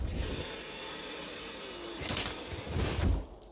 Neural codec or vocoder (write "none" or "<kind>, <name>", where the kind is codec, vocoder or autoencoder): none